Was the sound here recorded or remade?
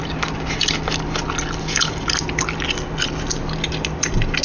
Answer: recorded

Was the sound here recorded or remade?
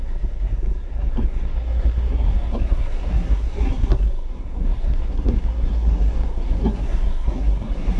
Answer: remade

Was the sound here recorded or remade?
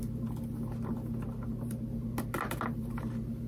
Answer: recorded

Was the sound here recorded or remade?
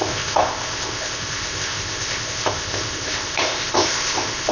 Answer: remade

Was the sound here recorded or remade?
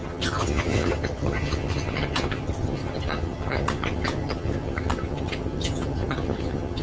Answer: remade